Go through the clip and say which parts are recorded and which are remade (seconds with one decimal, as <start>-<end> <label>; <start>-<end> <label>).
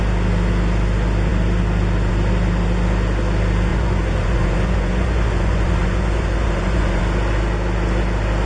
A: 0.0-3.7 recorded; 3.7-7.0 remade; 7.0-8.5 recorded